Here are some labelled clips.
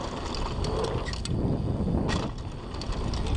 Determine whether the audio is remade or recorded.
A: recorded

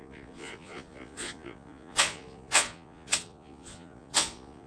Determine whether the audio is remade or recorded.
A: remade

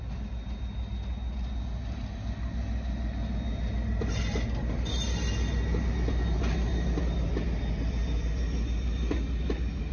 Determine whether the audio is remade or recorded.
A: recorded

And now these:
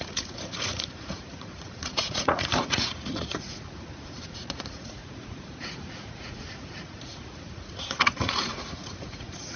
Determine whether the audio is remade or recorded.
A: remade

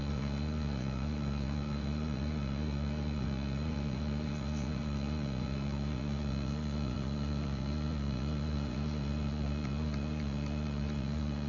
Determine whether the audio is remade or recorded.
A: remade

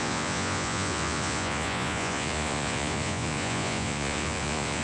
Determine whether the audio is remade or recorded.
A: remade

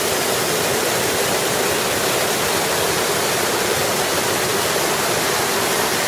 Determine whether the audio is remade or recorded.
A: recorded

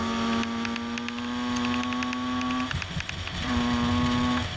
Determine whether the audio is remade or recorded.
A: recorded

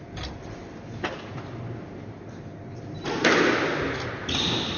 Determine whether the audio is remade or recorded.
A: recorded